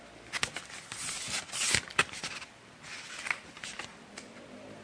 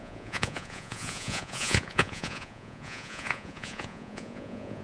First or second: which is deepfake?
second